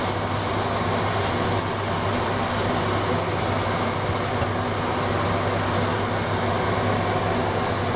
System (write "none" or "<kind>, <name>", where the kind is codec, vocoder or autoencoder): none